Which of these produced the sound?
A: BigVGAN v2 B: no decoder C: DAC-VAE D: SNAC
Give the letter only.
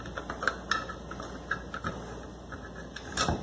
B